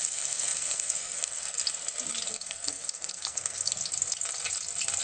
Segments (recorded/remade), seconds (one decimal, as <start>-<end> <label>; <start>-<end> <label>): 0.0-1.6 remade; 1.6-2.3 recorded; 2.3-3.8 remade; 3.8-5.0 recorded